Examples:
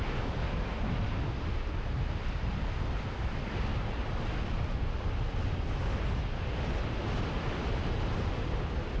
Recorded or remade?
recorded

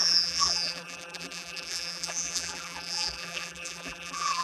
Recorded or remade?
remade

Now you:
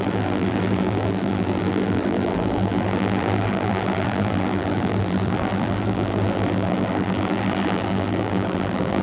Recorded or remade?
remade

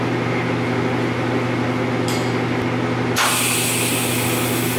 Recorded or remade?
recorded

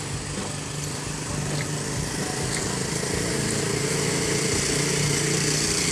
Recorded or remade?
recorded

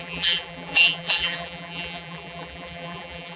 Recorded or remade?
remade